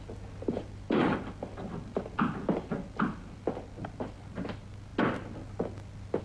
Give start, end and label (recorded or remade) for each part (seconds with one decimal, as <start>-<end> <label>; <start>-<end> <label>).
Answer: 0.0-6.2 recorded

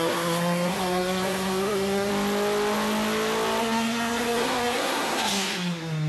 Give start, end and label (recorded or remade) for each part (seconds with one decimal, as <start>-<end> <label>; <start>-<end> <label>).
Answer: 0.0-2.1 remade; 2.1-3.6 recorded; 3.6-6.1 remade

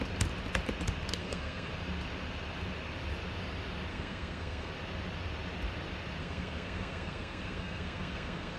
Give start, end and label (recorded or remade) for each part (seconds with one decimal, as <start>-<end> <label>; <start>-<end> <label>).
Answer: 0.0-1.2 recorded; 1.2-1.7 remade; 1.7-3.9 recorded; 3.9-4.7 remade; 4.7-6.2 recorded; 6.2-8.6 remade

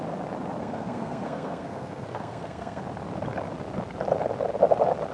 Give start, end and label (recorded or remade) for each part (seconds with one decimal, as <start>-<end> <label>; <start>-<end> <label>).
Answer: 0.0-0.6 recorded; 0.6-2.8 remade; 2.8-5.1 recorded